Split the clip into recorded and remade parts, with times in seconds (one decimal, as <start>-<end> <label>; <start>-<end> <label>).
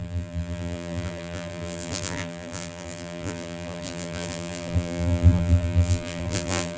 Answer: 0.0-6.8 remade